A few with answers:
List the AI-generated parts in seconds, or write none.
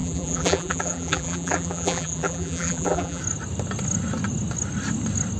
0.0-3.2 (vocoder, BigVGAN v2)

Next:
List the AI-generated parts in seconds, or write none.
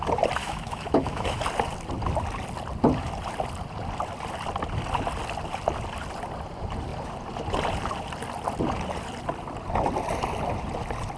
0.4-1.4 (autoencoder, DAC-VAE)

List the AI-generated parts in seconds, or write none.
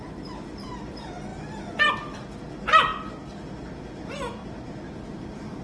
none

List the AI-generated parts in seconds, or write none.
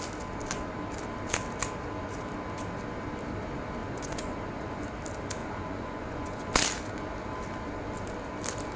3.8-4.7 (vocoder, Vocos); 5.4-6.5